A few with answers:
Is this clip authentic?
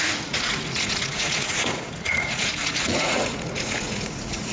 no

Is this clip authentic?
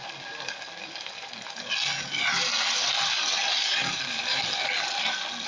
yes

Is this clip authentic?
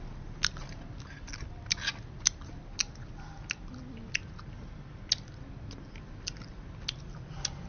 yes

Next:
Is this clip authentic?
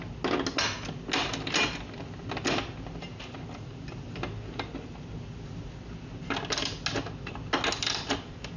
yes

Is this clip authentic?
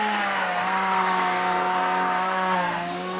no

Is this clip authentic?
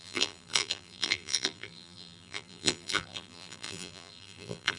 no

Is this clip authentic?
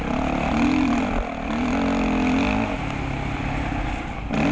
yes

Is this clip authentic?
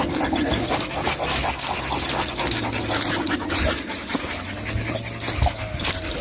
yes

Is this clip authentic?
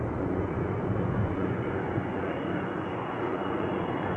no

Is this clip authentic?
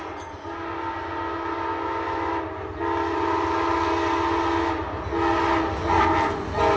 yes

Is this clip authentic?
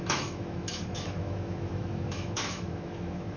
no